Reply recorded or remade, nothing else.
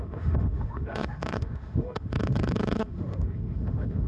remade